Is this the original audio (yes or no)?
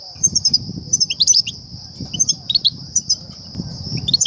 no